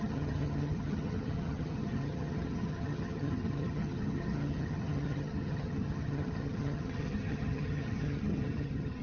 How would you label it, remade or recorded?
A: remade